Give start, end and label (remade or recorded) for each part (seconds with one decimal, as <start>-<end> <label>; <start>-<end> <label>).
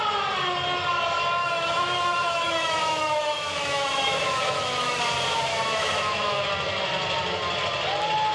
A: 0.0-1.4 recorded; 1.4-5.0 remade; 5.0-5.5 recorded; 5.5-6.4 remade; 6.4-8.3 recorded